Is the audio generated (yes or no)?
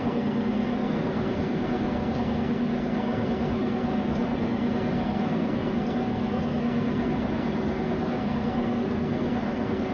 yes